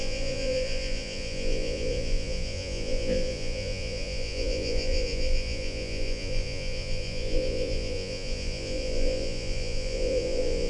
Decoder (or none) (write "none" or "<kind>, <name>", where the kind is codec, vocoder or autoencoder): vocoder, Vocos